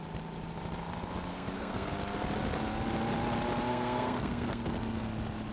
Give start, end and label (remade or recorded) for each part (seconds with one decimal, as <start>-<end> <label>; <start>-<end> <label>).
0.0-1.3 recorded; 1.3-1.9 remade; 1.9-3.7 recorded; 3.7-4.8 remade; 4.8-5.5 recorded